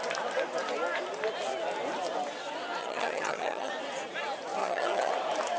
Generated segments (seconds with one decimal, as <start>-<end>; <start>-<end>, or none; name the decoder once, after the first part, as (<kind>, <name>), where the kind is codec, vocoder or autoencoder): 2.8-3.7 (vocoder, HiFi-GAN); 4.6-5.1